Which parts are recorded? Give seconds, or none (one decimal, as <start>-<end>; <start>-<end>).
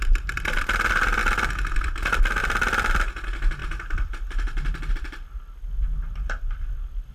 0.0-1.2; 1.9-2.4; 3.1-3.6; 4.9-7.1